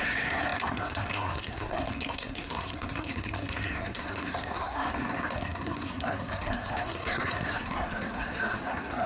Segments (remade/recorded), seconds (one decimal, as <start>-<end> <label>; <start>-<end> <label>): 0.0-9.1 remade

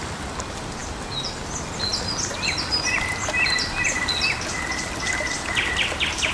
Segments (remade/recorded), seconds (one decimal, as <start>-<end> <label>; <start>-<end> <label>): 0.0-6.3 recorded

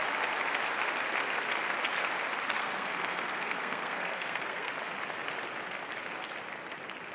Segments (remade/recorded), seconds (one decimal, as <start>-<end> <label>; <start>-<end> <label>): 0.0-2.6 recorded; 2.6-4.7 remade; 4.7-7.1 recorded

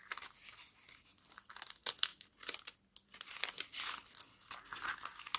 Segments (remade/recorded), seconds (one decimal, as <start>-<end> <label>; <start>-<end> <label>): 0.0-5.4 recorded